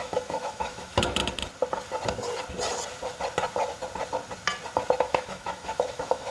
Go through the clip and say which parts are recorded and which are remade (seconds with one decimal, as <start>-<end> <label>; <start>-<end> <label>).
0.0-1.2 remade; 1.2-5.0 recorded; 5.0-6.3 remade